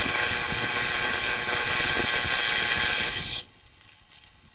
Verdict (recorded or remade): remade